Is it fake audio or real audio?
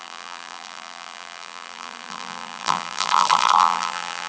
fake